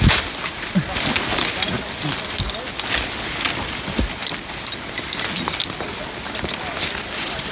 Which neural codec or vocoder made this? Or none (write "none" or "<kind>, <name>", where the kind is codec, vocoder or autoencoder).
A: none